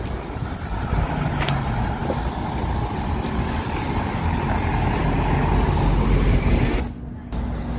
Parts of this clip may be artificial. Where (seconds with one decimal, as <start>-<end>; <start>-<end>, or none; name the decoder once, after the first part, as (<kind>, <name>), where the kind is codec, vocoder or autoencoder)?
none